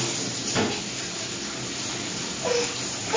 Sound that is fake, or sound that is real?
real